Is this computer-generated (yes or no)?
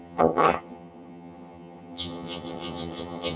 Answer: yes